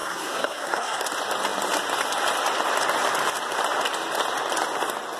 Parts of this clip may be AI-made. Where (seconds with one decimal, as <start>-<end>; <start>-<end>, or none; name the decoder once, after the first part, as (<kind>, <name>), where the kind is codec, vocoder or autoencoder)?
0.0-1.0 (codec, SNAC)